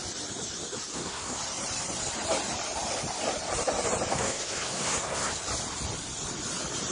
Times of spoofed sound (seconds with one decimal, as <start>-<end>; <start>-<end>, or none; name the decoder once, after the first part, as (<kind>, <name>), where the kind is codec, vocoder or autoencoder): 0.9-1.4 (codec, SNAC); 4.1-5.4